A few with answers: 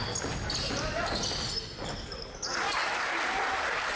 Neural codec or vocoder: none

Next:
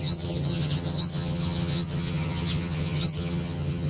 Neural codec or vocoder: vocoder, HiFi-GAN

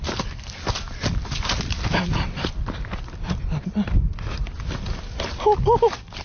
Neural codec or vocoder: none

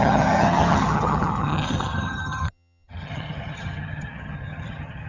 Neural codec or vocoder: vocoder, HiFi-GAN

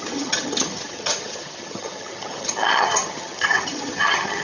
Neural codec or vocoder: vocoder, HiFi-GAN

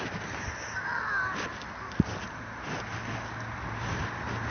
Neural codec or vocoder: none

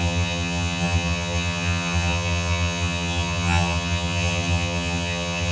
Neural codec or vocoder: vocoder, HiFi-GAN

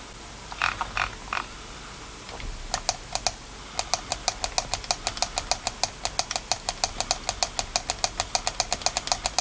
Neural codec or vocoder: none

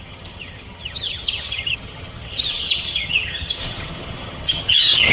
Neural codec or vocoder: vocoder, HiFi-GAN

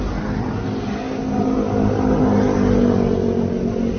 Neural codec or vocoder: none